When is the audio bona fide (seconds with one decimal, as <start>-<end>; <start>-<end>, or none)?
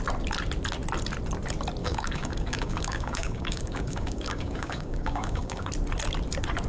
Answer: 0.0-1.8; 5.7-6.7